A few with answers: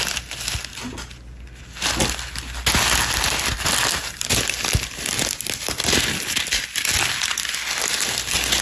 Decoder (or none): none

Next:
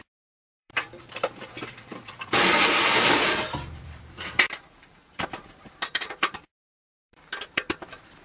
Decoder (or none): vocoder, BigVGAN v2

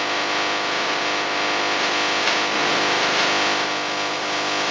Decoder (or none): none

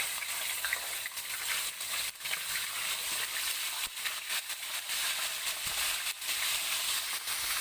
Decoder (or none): none